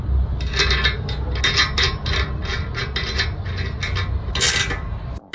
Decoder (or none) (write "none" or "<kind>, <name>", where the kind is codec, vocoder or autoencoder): none